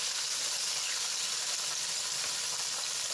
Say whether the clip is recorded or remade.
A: recorded